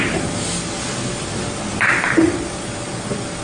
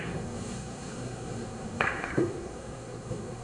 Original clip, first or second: first